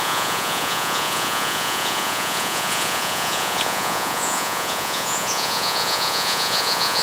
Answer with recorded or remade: remade